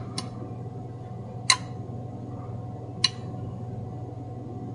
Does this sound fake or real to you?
real